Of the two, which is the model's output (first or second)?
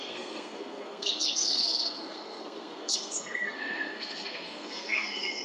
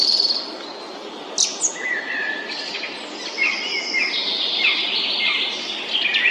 first